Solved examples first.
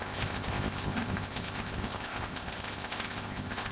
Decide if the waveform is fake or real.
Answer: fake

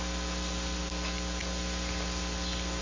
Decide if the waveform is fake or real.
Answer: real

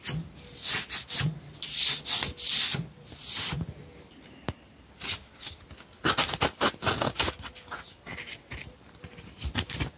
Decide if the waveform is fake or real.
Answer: real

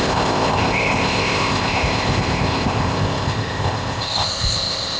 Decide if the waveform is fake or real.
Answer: fake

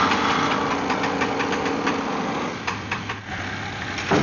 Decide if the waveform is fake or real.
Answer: real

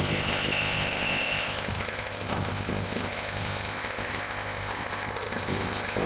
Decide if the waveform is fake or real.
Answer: fake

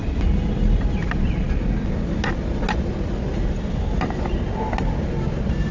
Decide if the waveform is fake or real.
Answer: real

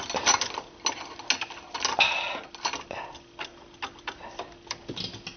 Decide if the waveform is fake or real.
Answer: real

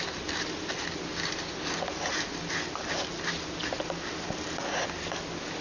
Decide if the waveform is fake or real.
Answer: real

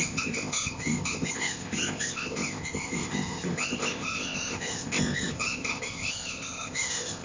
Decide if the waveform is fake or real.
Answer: fake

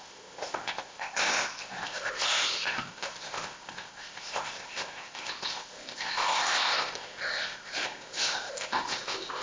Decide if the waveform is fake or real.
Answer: fake